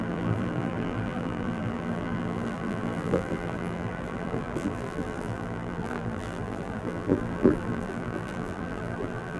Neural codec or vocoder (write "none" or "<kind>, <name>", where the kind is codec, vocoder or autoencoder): vocoder, BigVGAN v2